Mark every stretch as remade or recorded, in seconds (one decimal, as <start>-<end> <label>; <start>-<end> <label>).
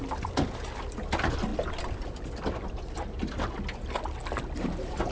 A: 0.0-5.1 recorded